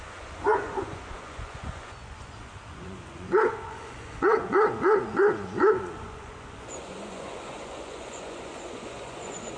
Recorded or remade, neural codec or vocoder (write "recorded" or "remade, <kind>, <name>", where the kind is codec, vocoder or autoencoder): remade, vocoder, Vocos